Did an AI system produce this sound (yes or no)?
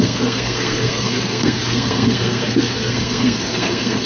yes